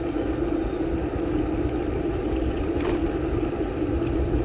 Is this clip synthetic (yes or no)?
no